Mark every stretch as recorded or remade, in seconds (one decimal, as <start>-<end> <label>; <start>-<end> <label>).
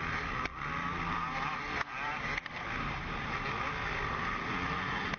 0.0-5.2 recorded